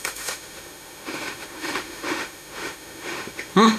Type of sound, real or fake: fake